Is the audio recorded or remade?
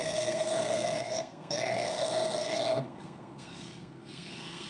remade